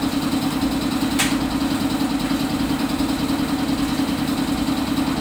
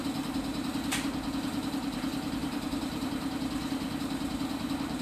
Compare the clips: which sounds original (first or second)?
first